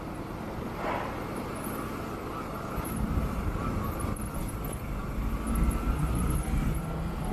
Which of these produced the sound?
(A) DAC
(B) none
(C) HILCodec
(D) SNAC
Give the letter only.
B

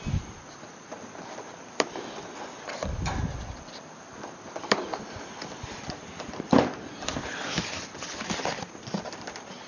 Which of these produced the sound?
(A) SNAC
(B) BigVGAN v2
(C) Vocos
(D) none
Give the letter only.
B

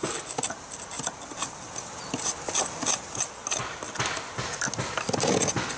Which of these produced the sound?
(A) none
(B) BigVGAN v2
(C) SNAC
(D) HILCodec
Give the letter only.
A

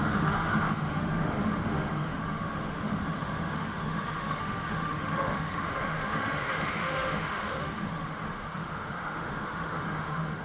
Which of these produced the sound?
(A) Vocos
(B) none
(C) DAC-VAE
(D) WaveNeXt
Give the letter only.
C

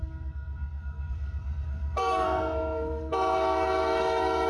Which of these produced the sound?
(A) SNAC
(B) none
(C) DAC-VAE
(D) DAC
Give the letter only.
A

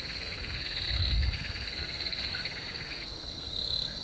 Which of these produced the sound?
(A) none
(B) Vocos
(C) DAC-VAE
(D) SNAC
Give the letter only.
D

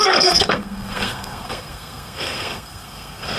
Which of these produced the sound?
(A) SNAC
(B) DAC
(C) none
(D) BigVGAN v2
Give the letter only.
A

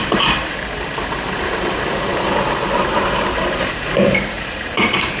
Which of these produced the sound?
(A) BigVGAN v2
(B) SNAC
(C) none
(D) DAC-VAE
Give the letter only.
A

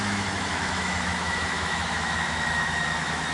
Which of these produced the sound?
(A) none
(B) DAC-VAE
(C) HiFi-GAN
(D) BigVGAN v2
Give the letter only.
B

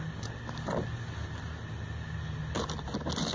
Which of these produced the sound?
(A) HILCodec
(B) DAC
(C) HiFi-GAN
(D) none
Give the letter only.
D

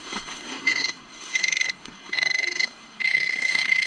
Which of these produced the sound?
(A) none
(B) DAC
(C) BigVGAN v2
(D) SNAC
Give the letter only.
D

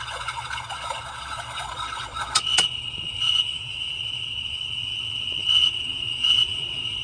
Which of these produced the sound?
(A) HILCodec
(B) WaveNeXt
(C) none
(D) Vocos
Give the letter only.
D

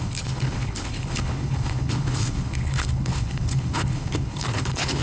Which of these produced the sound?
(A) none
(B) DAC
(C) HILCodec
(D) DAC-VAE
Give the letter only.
C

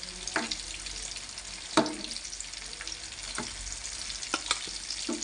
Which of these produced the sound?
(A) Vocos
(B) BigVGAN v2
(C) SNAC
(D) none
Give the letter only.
D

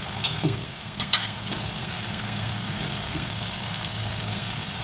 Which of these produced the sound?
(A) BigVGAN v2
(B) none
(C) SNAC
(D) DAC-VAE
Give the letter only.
C